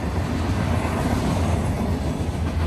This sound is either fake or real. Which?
real